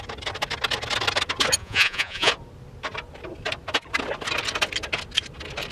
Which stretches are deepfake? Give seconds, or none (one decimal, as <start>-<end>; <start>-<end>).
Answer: 1.6-2.3